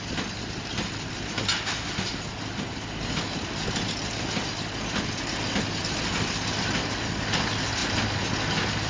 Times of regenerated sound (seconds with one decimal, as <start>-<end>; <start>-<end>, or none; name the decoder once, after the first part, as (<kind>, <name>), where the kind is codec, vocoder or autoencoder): none